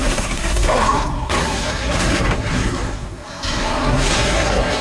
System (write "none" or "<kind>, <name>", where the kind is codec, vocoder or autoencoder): codec, SNAC